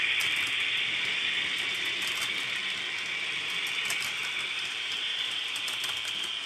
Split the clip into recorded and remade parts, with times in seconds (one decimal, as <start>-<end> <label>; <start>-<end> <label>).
0.0-1.1 remade; 1.1-3.1 recorded; 3.1-6.5 remade